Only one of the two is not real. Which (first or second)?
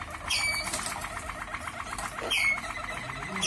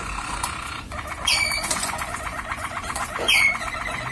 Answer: second